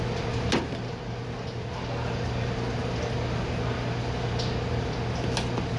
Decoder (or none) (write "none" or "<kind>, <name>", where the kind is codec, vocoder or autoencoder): none